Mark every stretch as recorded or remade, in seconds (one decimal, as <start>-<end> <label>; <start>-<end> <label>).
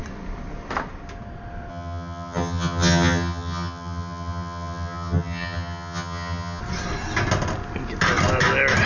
0.0-1.7 recorded; 1.7-6.6 remade; 6.6-8.9 recorded